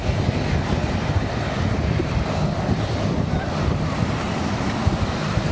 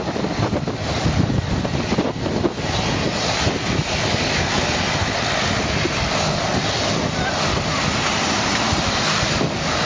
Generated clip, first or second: first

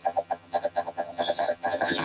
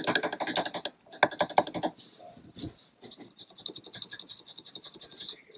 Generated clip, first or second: first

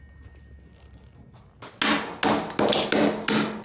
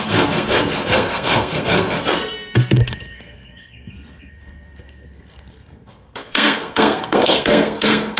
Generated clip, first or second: second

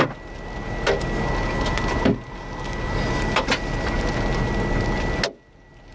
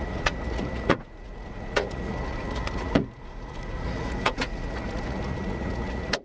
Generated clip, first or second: second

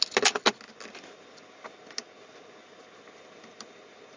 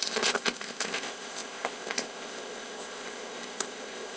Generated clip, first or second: second